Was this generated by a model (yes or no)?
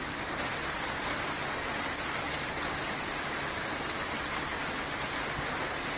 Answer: no